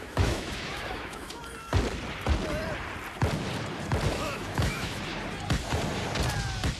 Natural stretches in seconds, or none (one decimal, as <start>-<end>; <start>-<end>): 1.4-4.1; 5.1-6.8